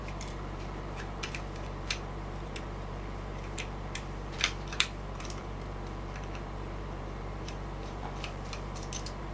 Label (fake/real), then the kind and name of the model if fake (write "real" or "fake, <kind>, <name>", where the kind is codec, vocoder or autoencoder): fake, vocoder, BigVGAN v2